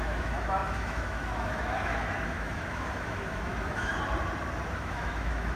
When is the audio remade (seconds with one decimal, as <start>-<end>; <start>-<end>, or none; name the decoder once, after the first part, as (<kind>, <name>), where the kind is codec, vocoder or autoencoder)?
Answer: 0.0-3.9 (autoencoder, DAC-VAE); 4.7-5.6